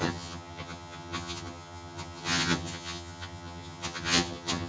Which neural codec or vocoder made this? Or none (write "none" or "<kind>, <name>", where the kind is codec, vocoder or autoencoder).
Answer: vocoder, HiFi-GAN